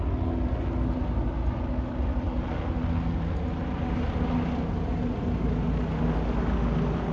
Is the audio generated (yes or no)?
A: no